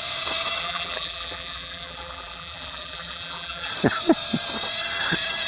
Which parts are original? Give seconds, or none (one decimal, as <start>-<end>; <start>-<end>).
0.0-0.6; 3.7-5.5